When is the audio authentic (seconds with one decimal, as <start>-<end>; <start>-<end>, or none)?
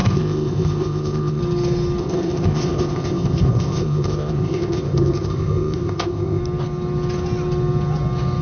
1.4-2.0; 6.4-8.4